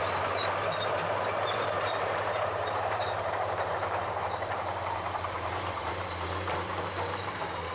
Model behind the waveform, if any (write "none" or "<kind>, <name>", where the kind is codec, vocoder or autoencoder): vocoder, BigVGAN v2